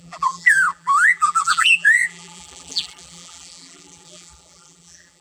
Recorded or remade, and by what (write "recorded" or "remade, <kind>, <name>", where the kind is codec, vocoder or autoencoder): remade, vocoder, BigVGAN v2